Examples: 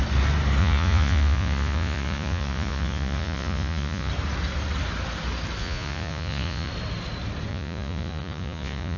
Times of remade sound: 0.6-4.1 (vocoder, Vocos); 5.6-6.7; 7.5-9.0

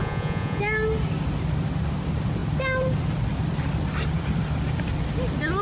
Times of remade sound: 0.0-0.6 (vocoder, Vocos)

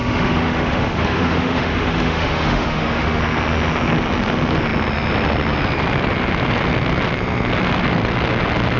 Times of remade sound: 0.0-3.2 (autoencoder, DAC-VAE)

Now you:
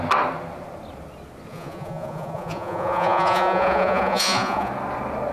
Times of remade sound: 1.5-4.7 (vocoder, Vocos)

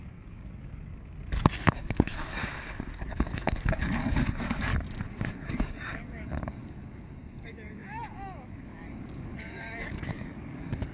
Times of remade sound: 0.0-0.9 (codec, DAC); 1.4-2.4; 3.0-4.7; 5.2-10.9

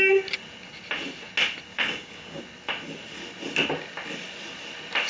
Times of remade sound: 1.7-2.4 (codec, DAC)